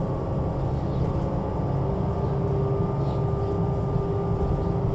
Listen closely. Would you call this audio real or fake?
real